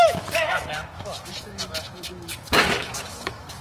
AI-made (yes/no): yes